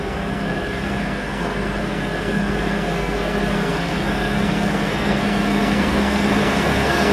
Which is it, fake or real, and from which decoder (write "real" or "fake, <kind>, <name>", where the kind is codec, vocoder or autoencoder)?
fake, codec, SNAC